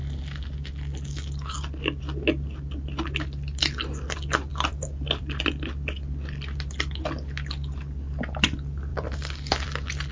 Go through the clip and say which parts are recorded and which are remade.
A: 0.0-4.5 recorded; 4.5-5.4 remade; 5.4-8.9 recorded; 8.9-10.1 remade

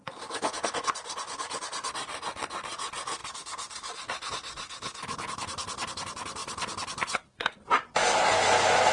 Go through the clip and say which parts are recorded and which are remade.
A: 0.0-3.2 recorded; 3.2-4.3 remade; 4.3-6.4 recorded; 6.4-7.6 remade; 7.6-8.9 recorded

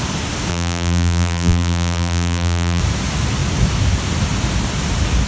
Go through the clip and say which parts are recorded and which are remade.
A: 0.0-0.5 recorded; 0.5-2.8 remade; 2.8-5.3 recorded